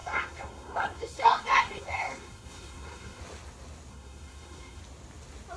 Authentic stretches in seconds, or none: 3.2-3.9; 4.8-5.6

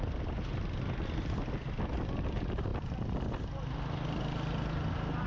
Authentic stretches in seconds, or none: 0.0-5.3

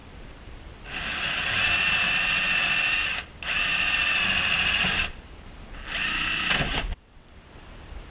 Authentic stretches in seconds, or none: 0.0-8.1

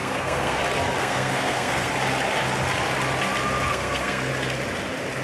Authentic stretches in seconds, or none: 0.6-1.0; 1.9-3.7; 4.3-5.2

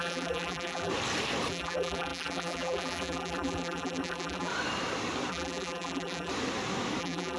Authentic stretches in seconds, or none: 0.9-1.5; 4.5-5.3; 6.3-7.0